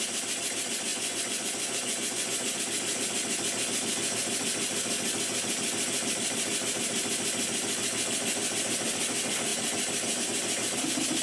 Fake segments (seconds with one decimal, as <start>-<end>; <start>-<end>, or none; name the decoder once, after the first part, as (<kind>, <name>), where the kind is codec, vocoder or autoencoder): 0.9-2.6 (vocoder, Vocos)